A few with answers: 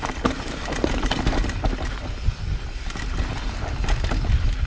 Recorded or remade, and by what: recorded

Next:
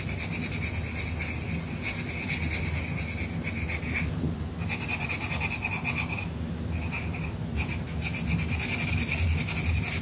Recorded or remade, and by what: recorded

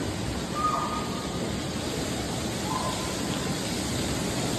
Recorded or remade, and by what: recorded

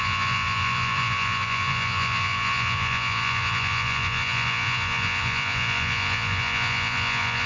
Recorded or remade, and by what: remade, vocoder, Vocos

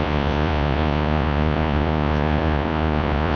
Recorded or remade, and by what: remade, vocoder, Vocos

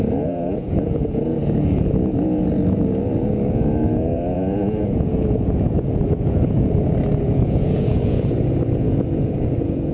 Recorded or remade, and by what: remade, vocoder, Vocos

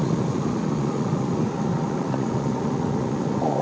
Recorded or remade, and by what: remade, vocoder, Vocos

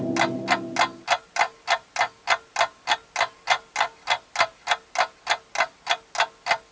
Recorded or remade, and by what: recorded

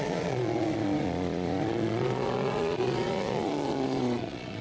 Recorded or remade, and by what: remade, vocoder, Vocos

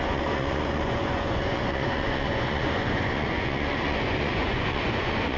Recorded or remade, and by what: remade, vocoder, Vocos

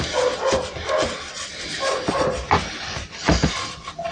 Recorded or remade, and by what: recorded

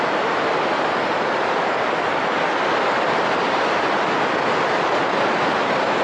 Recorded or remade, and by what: recorded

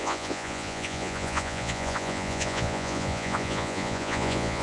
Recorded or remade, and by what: remade, vocoder, Vocos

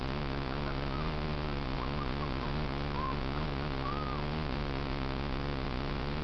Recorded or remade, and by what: remade, vocoder, Vocos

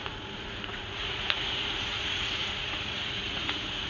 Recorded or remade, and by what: remade, vocoder, Vocos